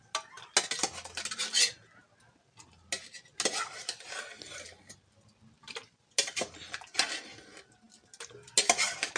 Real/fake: real